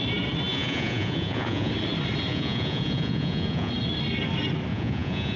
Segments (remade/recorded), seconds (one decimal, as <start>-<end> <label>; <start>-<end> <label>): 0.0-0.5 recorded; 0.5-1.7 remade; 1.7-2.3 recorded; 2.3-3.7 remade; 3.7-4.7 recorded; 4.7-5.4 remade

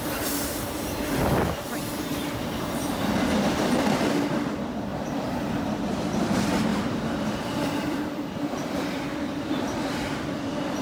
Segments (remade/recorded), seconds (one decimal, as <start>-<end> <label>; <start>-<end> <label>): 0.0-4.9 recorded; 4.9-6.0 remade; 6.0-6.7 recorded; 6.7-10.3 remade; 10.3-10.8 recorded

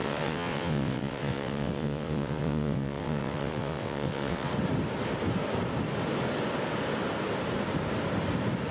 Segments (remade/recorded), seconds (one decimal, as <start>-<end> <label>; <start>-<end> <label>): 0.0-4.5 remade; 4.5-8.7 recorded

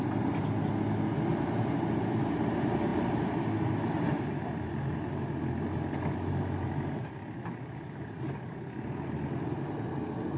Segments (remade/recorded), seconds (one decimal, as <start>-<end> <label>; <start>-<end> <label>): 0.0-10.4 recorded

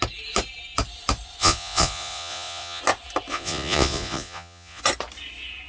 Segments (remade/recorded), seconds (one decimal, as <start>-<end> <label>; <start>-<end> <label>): 0.0-1.4 recorded; 1.4-2.8 remade; 2.8-3.3 recorded; 3.3-4.8 remade; 4.8-5.7 recorded

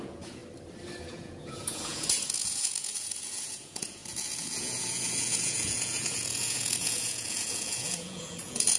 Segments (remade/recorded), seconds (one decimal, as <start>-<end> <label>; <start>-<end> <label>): 0.0-0.4 remade; 0.4-1.0 recorded; 1.0-8.8 remade